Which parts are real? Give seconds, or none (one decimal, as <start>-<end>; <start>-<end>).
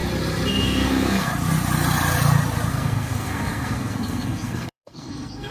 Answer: 0.0-0.5; 1.3-2.7